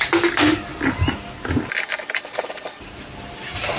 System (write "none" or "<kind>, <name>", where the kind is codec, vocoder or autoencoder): none